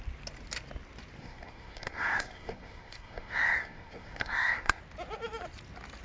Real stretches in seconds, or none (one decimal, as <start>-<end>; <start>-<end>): 0.0-1.2; 4.8-6.0